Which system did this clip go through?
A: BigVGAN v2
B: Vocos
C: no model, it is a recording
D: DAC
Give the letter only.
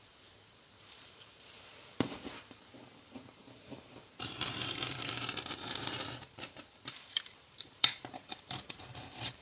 A